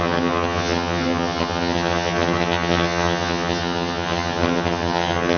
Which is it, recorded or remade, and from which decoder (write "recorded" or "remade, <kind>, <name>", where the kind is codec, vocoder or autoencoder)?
remade, vocoder, HiFi-GAN